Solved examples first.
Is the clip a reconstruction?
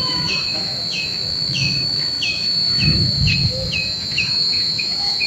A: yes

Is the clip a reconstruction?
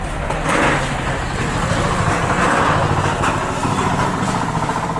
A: no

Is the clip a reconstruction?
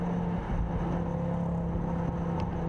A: no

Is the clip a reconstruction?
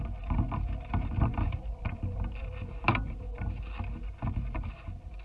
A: no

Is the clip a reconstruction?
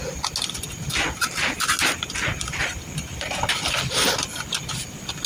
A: no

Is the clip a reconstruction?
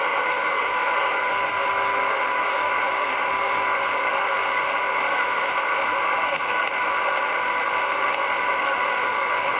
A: yes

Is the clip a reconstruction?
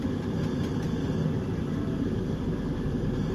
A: no